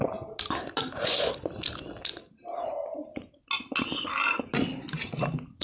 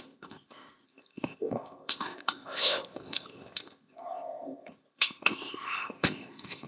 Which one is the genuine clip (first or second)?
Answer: first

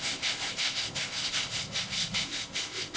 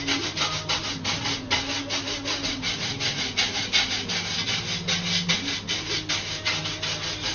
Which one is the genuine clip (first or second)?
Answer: second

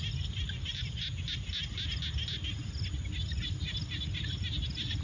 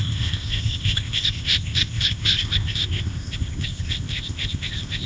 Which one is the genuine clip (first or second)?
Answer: first